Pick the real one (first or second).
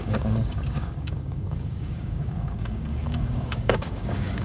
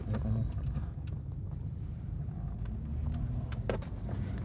second